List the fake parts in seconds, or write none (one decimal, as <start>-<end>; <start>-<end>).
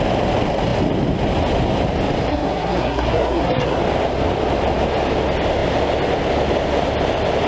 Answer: 2.3-3.8